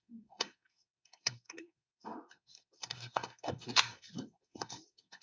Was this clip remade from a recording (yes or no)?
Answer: yes